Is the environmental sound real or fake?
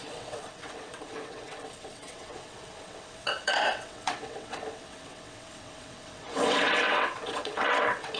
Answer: fake